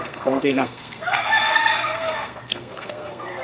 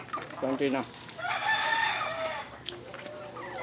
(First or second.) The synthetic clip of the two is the first